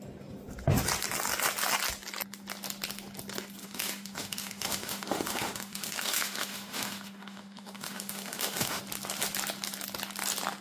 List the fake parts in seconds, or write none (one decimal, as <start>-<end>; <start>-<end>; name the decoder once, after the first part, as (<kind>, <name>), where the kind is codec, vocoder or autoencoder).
3.6-8.8 (autoencoder, DAC-VAE)